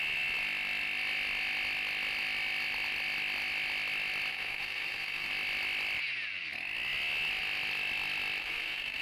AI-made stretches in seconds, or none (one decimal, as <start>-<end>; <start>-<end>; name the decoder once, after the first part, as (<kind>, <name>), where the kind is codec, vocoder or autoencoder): 4.3-5.3 (codec, SNAC); 8.4-9.0